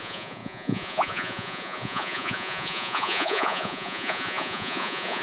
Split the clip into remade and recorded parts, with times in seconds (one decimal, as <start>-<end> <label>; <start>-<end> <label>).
0.0-5.2 remade